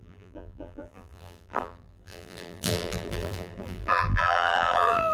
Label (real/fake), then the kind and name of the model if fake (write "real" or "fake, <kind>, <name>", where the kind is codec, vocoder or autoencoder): fake, vocoder, BigVGAN v2